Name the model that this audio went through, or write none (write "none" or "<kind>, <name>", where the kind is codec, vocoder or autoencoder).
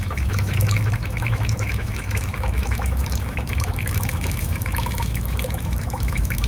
autoencoder, DAC-VAE